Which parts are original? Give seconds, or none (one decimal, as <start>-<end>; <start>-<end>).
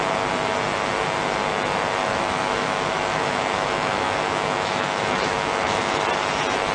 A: 0.0-2.0; 6.0-6.7